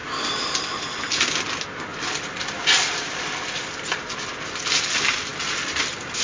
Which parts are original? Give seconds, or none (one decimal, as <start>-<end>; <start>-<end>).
1.0-1.9; 3.2-6.2